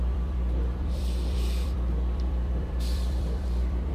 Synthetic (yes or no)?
yes